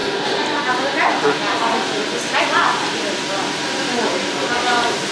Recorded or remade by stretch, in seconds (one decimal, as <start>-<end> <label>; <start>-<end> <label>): 0.0-5.1 recorded